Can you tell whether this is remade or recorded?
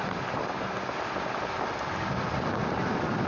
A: recorded